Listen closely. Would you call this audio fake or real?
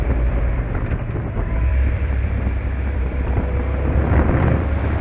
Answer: fake